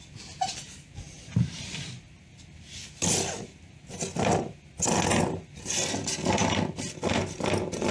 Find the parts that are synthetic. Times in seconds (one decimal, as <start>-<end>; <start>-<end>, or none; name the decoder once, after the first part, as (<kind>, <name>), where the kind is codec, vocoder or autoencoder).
none